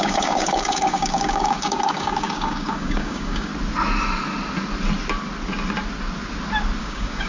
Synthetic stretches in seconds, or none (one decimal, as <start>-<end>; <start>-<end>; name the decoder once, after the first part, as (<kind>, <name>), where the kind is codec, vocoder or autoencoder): 0.0-3.5 (codec, DAC); 6.8-7.3